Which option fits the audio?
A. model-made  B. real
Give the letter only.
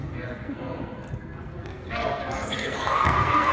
A